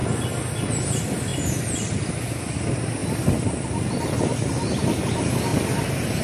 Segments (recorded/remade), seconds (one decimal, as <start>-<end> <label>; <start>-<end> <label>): 0.0-5.5 recorded; 5.5-6.2 remade

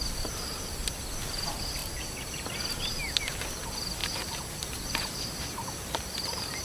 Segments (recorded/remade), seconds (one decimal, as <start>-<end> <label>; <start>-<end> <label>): 0.0-0.7 remade; 0.7-1.8 recorded; 1.8-2.7 remade; 2.7-4.0 recorded; 4.0-5.3 remade; 5.3-6.6 recorded

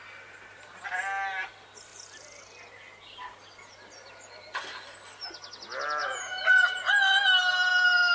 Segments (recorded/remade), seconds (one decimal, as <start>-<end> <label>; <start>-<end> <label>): 0.0-6.0 recorded; 6.0-6.9 remade; 6.9-8.1 recorded

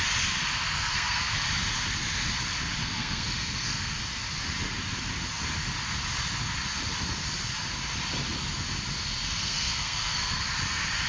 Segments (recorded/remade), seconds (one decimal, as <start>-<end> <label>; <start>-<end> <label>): 0.0-0.6 recorded; 0.6-1.4 remade; 1.4-2.8 recorded; 2.8-4.0 remade; 4.0-9.4 recorded; 9.4-10.4 remade; 10.4-11.1 recorded

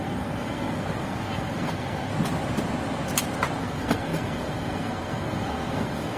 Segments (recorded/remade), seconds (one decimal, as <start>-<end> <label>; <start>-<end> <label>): 0.0-2.1 remade; 2.1-3.6 recorded; 3.6-6.2 remade